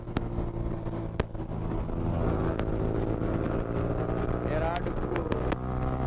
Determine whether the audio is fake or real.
real